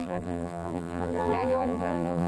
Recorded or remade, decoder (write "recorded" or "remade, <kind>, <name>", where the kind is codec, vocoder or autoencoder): remade, vocoder, BigVGAN v2